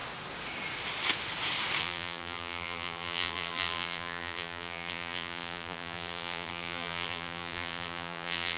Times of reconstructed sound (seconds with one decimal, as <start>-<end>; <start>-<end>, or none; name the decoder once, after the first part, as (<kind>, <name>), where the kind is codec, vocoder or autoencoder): 1.8-8.6 (vocoder, BigVGAN v2)